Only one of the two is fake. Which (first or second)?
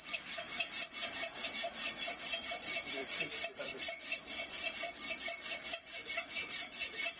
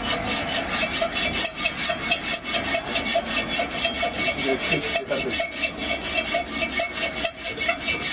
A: first